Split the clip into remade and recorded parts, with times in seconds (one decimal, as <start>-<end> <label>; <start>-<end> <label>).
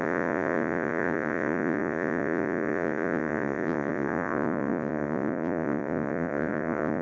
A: 0.0-7.0 remade